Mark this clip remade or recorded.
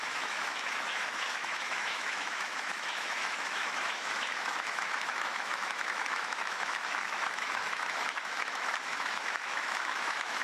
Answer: remade